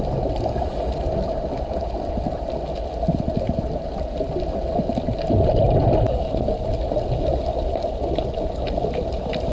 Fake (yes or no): no